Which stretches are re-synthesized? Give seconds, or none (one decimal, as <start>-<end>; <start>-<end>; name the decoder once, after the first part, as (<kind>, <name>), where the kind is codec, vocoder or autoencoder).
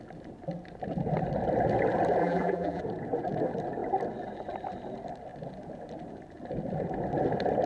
2.2-2.8 (vocoder, BigVGAN v2)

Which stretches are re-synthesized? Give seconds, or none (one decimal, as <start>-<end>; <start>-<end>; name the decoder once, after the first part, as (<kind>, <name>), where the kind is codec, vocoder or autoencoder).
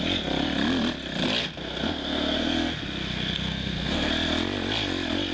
1.4-4.1 (codec, SNAC)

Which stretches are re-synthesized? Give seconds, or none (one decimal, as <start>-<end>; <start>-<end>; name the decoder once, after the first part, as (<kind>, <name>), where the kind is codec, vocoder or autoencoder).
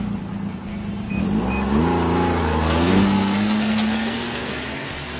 2.4-4.6 (codec, SNAC)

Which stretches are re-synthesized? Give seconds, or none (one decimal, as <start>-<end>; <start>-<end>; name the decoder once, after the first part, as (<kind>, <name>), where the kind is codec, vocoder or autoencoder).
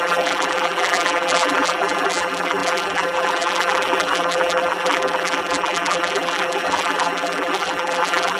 0.0-8.4 (vocoder, BigVGAN v2)